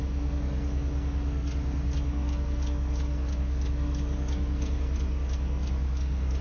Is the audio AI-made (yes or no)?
yes